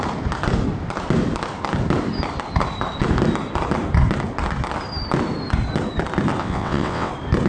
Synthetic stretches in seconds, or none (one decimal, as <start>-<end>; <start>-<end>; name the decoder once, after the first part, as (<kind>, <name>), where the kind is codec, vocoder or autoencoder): 6.4-7.1 (vocoder, WaveNeXt)